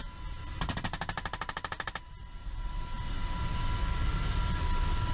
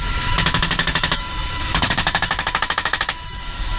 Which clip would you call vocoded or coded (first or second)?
second